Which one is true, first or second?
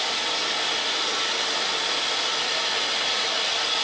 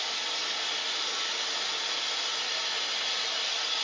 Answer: second